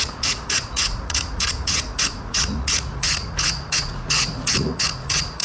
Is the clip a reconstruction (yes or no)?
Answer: yes